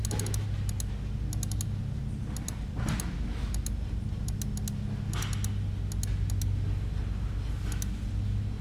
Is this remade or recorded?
recorded